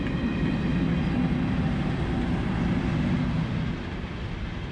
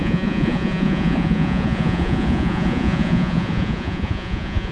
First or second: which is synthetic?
second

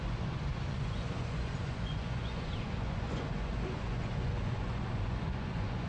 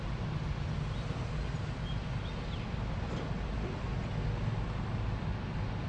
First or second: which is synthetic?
first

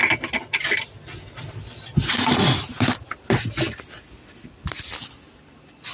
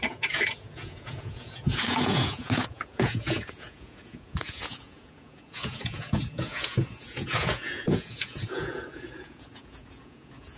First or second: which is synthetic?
second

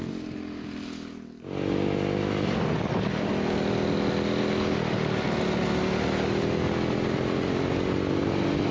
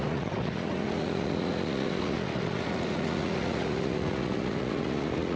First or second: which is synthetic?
second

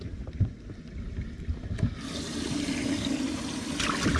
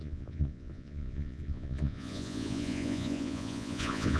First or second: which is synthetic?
second